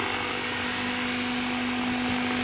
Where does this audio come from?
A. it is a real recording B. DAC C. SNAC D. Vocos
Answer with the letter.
A